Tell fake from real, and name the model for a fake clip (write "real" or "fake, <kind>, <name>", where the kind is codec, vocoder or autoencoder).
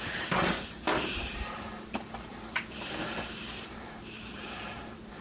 fake, vocoder, BigVGAN v2